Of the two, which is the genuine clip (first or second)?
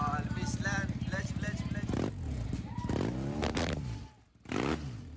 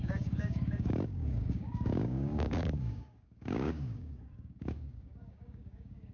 first